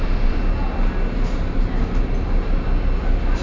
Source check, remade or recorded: recorded